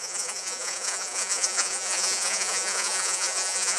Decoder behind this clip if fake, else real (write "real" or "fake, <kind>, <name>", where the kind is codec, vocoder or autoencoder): fake, vocoder, Vocos